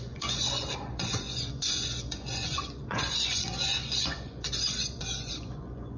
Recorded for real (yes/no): no